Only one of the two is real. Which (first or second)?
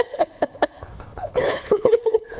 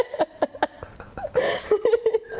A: second